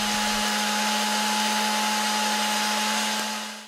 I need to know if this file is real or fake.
real